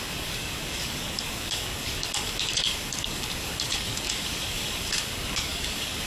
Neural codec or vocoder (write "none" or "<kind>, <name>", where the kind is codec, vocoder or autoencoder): codec, DAC